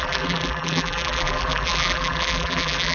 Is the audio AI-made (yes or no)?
yes